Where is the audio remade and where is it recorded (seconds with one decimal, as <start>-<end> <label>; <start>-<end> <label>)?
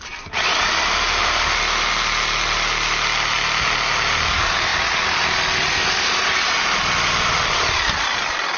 0.0-8.6 recorded